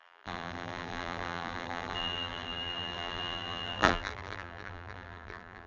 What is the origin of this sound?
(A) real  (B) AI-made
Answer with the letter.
B